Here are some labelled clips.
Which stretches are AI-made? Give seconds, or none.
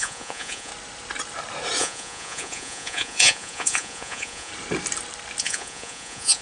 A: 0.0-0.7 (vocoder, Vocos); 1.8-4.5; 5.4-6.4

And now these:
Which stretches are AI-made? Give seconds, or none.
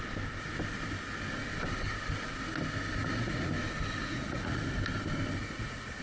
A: 3.0-3.5 (vocoder, Vocos); 4.0-4.6; 5.4-6.0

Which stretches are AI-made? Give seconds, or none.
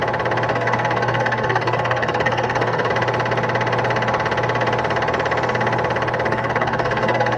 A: 0.5-2.9 (codec, SNAC); 6.3-7.4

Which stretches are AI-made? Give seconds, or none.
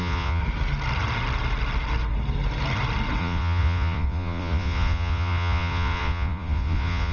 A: 0.0-0.4 (vocoder, Vocos); 3.2-7.1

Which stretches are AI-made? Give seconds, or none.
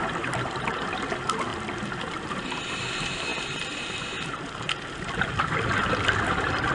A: none